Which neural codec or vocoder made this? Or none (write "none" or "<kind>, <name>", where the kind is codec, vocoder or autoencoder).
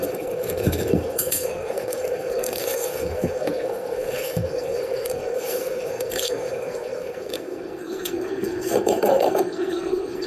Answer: codec, SNAC